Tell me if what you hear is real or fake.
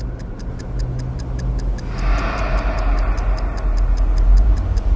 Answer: real